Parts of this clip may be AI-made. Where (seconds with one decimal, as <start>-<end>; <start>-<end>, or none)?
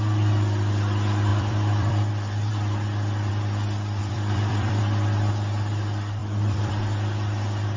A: 1.3-2.1; 4.0-4.8; 6.2-6.7